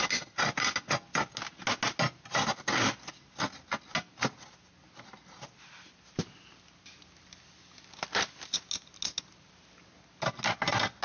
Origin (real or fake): real